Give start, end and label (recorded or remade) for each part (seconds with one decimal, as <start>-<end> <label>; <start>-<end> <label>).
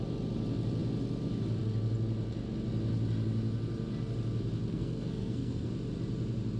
0.0-4.7 recorded; 4.7-5.7 remade; 5.7-6.6 recorded